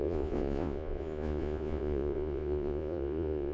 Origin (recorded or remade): remade